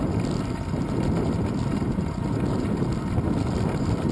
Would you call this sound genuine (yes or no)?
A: yes